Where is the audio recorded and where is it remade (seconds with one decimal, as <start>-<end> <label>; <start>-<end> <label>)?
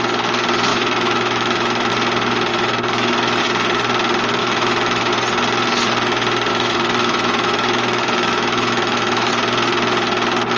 0.0-0.7 recorded; 0.7-1.9 remade; 1.9-2.5 recorded; 2.5-3.4 remade; 3.4-4.4 recorded; 4.4-5.1 remade; 5.1-6.5 recorded; 6.5-9.3 remade; 9.3-10.6 recorded